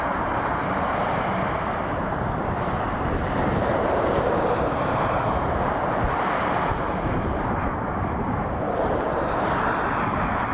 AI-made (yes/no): yes